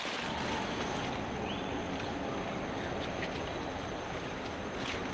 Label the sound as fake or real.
real